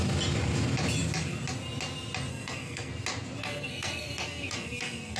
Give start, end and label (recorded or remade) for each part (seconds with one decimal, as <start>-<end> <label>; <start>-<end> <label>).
0.0-2.3 recorded; 2.3-2.9 remade; 2.9-3.4 recorded; 3.4-5.2 remade